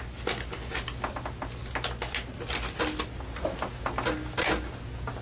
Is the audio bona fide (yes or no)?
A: yes